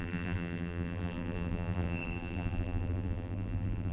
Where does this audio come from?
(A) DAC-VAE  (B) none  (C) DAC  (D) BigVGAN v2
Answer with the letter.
D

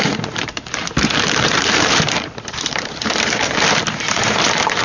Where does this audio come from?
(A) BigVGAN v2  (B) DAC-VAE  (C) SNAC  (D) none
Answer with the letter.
A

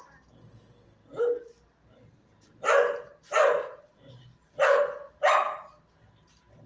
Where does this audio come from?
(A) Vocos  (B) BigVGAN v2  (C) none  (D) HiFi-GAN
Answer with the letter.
C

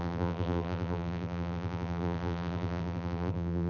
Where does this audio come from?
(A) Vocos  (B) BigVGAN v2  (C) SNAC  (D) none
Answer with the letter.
B